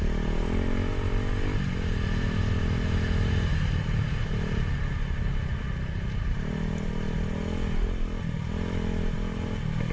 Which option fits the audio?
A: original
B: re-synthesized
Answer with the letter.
A